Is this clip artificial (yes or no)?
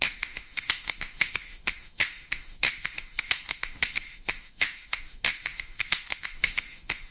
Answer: yes